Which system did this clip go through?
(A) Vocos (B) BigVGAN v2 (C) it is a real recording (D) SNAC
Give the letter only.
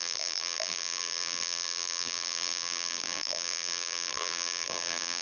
B